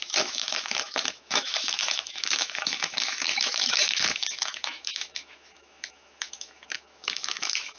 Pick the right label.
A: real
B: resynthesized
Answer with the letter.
B